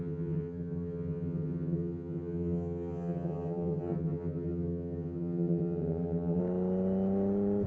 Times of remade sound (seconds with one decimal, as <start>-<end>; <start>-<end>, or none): 0.0-6.4